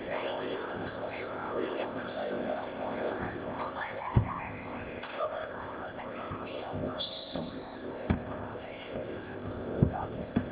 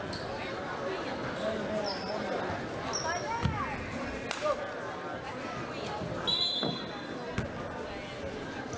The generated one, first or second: first